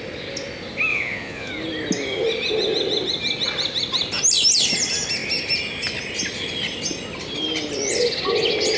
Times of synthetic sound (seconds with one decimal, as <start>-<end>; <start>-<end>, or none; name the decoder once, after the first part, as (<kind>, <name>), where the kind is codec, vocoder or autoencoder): 0.9-1.5 (vocoder, Vocos)